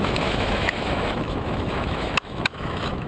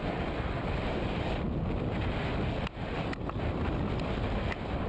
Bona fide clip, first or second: second